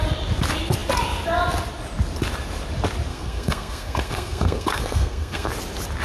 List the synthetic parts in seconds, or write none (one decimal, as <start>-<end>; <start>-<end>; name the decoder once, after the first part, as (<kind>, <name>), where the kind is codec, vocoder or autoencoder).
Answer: 3.1-5.5 (codec, SNAC)